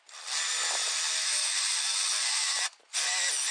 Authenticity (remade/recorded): recorded